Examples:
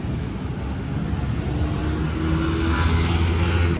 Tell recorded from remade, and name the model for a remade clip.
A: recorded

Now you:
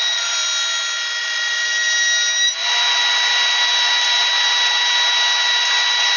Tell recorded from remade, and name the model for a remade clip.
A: recorded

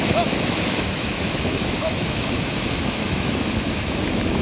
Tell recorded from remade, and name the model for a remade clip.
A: remade, autoencoder, DAC-VAE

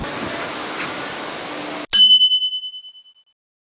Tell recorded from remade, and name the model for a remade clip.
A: recorded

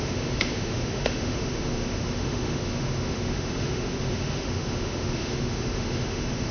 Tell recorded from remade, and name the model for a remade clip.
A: remade, autoencoder, DAC-VAE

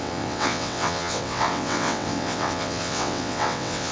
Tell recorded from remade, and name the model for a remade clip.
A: remade, vocoder, WaveNeXt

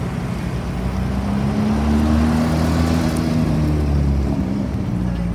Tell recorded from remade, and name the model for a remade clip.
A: recorded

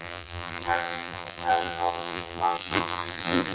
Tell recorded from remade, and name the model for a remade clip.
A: remade, vocoder, BigVGAN v2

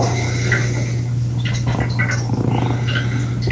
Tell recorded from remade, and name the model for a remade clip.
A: recorded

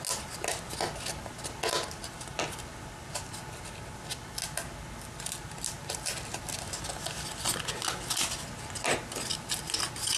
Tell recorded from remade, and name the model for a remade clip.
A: recorded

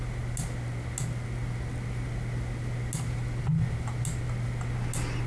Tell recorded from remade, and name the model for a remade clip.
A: recorded